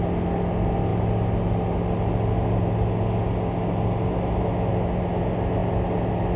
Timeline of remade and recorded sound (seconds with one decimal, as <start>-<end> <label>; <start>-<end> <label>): 0.0-6.4 recorded